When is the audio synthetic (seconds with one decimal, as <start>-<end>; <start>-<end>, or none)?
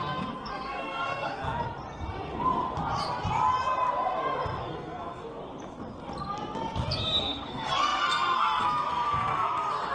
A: 0.0-1.4; 4.6-5.4; 7.2-9.9